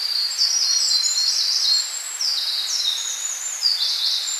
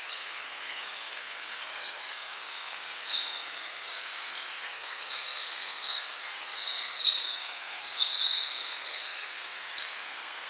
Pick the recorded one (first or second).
first